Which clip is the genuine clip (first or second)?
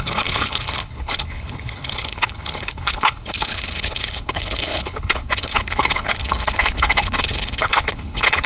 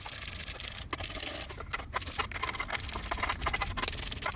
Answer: second